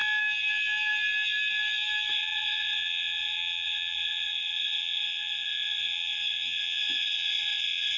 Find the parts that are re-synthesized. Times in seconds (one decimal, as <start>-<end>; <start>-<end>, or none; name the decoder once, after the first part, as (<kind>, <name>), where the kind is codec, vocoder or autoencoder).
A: 2.1-8.0 (vocoder, WaveNeXt)